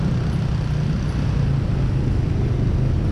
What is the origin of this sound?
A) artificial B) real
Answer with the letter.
B